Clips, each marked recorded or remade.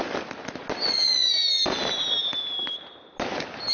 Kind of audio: recorded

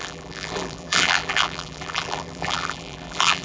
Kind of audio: remade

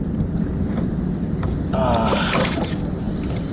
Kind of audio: recorded